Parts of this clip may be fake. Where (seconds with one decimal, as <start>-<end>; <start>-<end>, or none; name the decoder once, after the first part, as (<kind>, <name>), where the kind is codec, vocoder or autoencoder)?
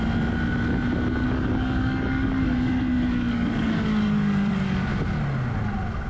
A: 1.2-4.9 (codec, DAC)